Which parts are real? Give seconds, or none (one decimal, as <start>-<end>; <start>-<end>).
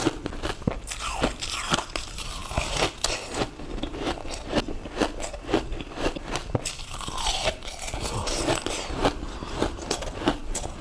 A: 0.0-10.8